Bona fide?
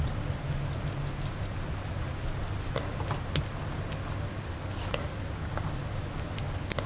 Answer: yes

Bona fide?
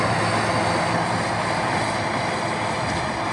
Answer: yes